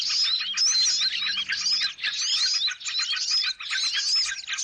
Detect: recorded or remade recorded